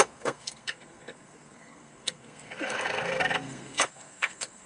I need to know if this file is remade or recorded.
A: remade